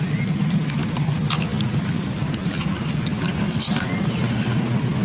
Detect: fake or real real